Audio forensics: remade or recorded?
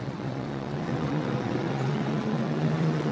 remade